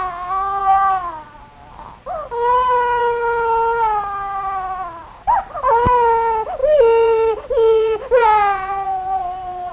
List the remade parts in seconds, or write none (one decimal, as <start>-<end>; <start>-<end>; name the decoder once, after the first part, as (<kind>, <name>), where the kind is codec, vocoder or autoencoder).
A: 5.0-5.7 (vocoder, BigVGAN v2); 6.6-9.7